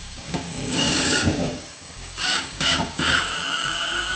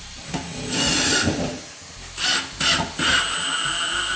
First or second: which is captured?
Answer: second